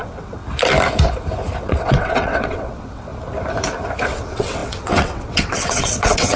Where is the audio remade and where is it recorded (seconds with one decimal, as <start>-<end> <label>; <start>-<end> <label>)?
0.0-0.4 remade; 0.4-1.6 recorded; 1.6-3.1 remade; 3.1-4.0 recorded; 4.0-6.4 remade